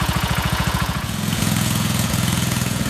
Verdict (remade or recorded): remade